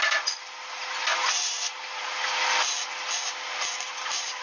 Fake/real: real